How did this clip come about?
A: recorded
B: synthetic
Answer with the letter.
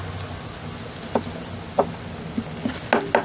A